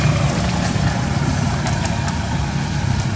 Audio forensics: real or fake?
real